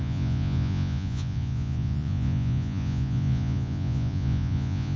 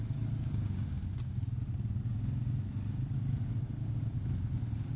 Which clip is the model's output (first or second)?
first